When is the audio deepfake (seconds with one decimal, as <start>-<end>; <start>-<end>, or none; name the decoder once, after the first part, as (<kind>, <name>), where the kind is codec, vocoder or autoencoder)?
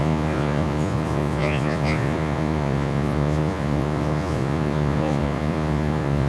0.0-6.3 (vocoder, Vocos)